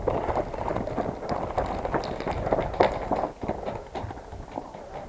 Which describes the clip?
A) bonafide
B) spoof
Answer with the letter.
A